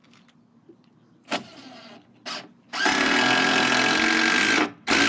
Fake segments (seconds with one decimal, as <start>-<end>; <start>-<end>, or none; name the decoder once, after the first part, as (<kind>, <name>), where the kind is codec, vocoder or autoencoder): none